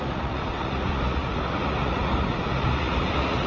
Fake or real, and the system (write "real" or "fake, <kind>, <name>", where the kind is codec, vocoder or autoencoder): fake, vocoder, Vocos